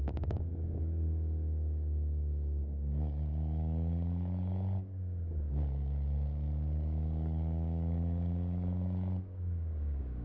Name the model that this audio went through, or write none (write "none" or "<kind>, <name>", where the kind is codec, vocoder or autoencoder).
codec, DAC